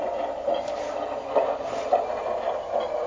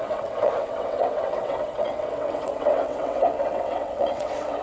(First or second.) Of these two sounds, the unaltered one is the first